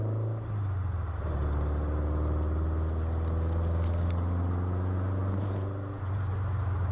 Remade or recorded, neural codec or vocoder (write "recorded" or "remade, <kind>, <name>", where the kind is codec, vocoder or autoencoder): recorded